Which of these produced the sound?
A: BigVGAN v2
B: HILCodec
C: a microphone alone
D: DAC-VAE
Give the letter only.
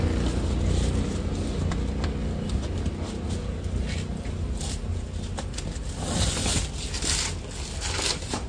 C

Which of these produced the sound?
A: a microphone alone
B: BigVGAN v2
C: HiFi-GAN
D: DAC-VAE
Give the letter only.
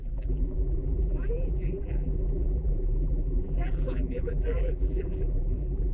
B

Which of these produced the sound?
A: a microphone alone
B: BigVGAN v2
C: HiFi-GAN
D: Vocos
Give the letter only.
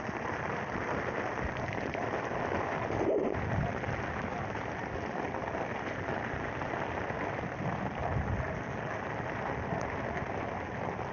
B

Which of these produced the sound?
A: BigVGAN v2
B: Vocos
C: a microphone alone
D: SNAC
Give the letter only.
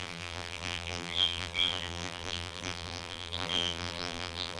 A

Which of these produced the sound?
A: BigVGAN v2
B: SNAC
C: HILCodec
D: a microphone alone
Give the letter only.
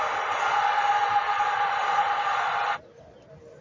D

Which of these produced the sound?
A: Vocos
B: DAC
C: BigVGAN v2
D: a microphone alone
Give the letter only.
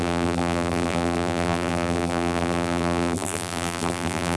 C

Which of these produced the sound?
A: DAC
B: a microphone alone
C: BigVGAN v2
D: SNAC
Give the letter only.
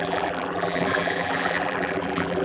C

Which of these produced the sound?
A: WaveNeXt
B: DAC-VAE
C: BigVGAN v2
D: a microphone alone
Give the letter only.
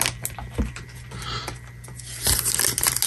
C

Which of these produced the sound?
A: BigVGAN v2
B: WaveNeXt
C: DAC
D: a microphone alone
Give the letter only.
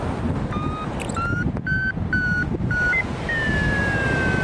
D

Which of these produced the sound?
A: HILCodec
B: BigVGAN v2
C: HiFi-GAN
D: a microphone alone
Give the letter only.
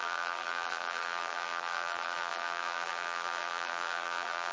B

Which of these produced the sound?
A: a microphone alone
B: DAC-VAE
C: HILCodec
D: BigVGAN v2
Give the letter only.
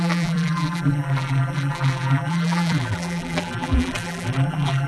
D